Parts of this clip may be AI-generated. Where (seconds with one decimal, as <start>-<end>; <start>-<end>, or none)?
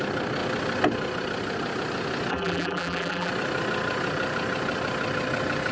2.3-3.3